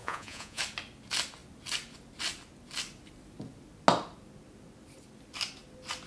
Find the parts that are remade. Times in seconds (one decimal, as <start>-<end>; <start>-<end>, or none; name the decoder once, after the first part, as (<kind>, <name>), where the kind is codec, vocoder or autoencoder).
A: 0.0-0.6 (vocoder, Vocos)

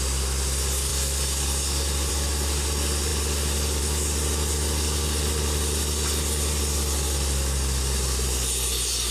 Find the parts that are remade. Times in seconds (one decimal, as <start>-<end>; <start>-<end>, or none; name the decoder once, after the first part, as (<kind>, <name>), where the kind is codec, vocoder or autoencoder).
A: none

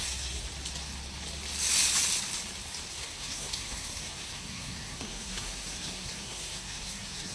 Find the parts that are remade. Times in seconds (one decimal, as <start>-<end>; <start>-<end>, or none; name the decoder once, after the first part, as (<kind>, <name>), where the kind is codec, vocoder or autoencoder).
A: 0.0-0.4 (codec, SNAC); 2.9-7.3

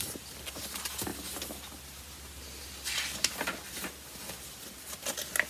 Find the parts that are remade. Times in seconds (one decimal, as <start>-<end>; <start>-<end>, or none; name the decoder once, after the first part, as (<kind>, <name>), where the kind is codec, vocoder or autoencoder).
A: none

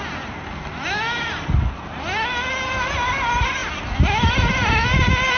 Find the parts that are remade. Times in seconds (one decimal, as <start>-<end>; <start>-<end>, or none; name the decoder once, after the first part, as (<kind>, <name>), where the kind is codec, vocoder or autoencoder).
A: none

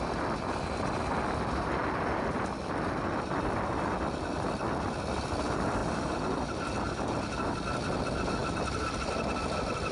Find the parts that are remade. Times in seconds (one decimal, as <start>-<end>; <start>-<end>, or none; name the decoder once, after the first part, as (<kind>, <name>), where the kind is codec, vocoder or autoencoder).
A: none

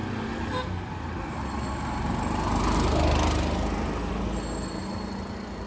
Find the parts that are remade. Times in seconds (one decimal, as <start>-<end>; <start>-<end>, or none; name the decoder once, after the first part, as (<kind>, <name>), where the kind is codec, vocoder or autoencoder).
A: none